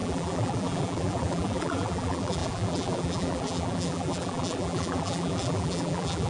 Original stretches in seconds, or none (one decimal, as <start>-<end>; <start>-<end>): none